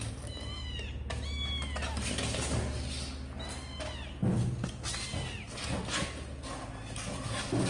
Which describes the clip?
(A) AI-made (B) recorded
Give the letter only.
B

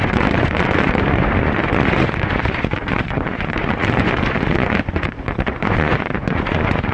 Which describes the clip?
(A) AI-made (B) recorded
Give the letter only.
A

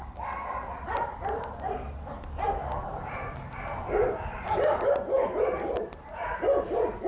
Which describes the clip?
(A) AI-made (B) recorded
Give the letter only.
B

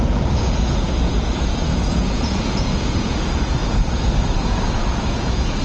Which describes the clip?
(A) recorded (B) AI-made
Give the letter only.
B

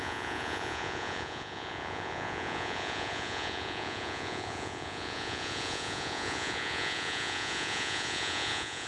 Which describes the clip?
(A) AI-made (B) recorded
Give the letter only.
A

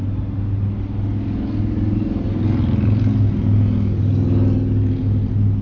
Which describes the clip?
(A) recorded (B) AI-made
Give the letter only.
A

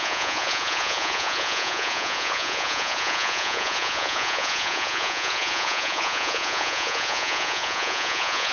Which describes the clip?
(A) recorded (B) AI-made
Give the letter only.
B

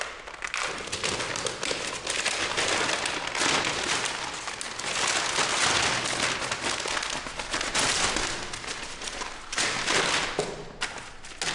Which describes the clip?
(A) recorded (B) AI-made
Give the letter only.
A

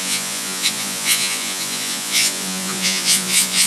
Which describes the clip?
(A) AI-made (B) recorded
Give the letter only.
A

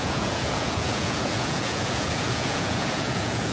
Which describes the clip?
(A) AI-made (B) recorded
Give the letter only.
A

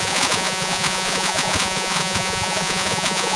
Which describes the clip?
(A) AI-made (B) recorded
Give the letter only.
A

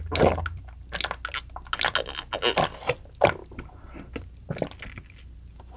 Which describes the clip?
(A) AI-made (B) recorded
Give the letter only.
B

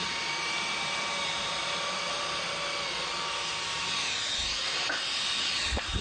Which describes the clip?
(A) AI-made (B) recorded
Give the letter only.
B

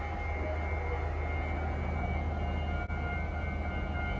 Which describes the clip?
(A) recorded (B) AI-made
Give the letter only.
A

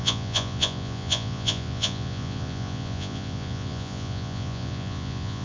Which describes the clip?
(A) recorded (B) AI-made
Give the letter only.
B